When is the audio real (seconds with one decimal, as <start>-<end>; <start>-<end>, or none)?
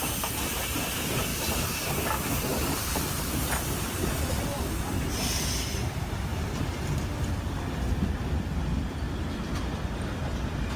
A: 0.0-1.3; 4.6-6.3; 6.9-10.8